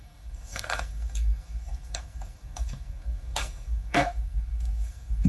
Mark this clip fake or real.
fake